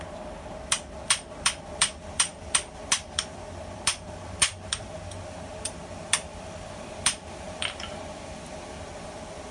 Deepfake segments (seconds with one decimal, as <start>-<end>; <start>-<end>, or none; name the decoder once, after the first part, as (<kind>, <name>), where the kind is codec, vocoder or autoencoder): 0.0-9.5 (vocoder, BigVGAN v2)